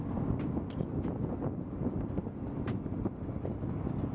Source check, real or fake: real